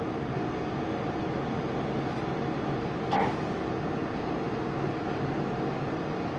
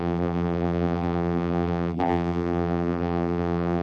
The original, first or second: first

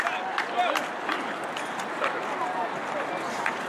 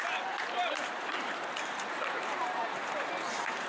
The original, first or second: first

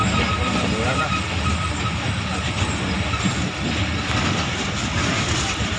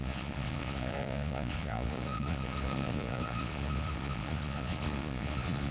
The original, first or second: first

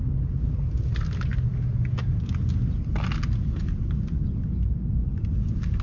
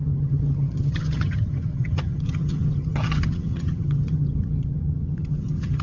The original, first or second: first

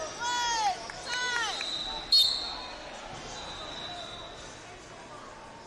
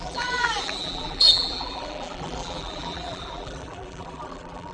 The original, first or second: first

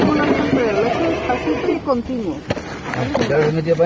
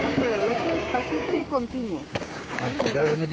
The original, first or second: first